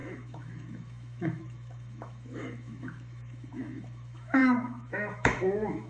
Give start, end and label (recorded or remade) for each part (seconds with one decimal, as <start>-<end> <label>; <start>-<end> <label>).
0.0-5.9 remade

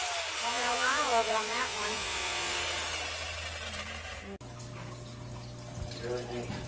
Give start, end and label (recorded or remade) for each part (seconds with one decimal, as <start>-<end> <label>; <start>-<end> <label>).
0.0-0.5 recorded; 0.5-2.6 remade; 2.6-6.7 recorded

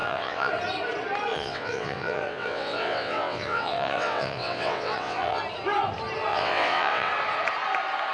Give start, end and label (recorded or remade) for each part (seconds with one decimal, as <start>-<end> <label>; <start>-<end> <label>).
0.0-0.5 remade; 0.5-1.3 recorded; 1.3-5.4 remade; 5.4-6.3 recorded; 6.3-7.1 remade; 7.1-8.1 recorded

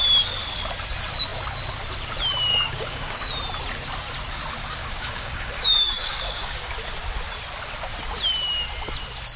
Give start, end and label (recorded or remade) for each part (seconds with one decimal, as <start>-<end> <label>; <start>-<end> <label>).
0.0-2.5 recorded; 2.5-3.3 remade; 3.3-4.8 recorded; 4.8-6.7 remade; 6.7-9.4 recorded

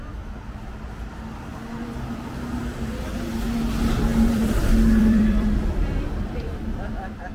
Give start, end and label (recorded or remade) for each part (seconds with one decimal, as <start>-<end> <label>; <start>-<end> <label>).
0.0-4.1 recorded; 4.1-7.3 remade